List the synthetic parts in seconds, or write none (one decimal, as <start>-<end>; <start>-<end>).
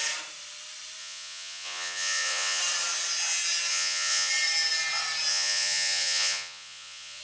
1.0-2.6; 3.7-4.3; 5.3-7.2